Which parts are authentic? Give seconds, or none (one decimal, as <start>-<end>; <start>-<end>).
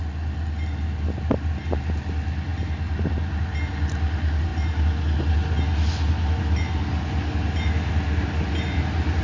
0.0-9.2